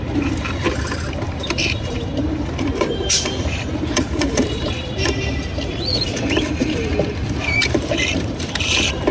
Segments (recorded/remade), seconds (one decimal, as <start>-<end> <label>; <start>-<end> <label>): 0.0-6.9 remade; 6.9-7.4 recorded; 7.4-9.1 remade